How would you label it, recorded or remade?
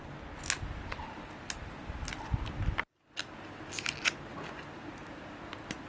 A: recorded